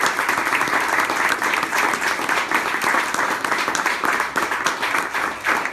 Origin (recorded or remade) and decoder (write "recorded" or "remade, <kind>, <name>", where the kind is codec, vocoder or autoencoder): recorded